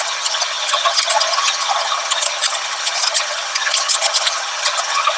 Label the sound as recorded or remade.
remade